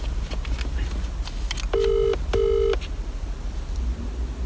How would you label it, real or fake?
real